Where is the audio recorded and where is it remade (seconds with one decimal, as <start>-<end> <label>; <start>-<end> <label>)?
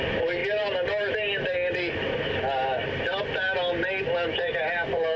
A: 0.0-5.2 recorded